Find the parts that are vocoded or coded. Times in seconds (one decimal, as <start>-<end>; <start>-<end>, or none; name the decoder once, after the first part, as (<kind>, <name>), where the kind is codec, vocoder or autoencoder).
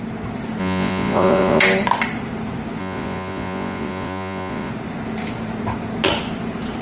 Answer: 0.6-1.6 (vocoder, Vocos); 2.8-4.7